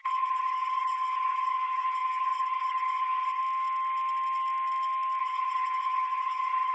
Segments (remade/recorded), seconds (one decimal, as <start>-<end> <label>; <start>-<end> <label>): 0.0-3.4 remade; 3.4-5.2 recorded; 5.2-6.7 remade